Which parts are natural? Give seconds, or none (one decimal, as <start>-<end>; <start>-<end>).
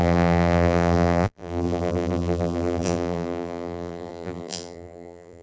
none